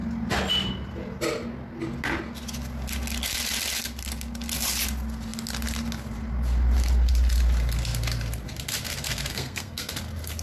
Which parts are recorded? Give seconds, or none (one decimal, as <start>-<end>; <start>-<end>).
0.0-9.3; 9.9-10.4